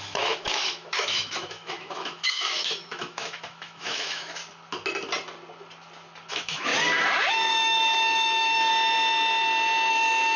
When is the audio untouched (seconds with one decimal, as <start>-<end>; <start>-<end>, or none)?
4.4-6.3; 6.7-7.3; 8.7-9.9